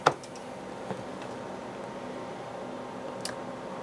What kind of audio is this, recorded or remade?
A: recorded